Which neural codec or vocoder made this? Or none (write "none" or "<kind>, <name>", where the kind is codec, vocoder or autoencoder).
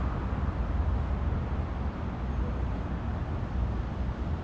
none